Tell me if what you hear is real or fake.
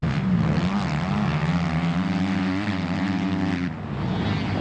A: real